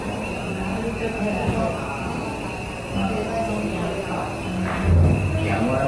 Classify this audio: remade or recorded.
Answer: recorded